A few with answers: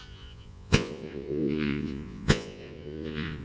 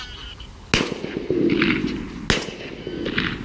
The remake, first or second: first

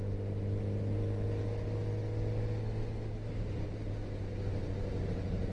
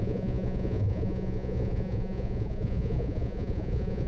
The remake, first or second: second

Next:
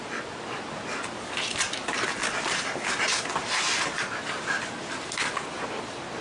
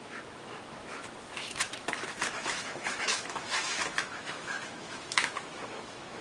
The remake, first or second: second